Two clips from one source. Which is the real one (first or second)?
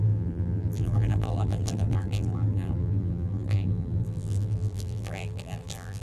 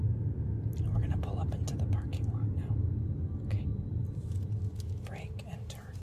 second